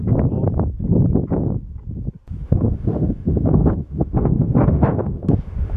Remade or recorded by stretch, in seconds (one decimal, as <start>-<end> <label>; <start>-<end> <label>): 0.0-2.4 recorded; 2.4-5.8 remade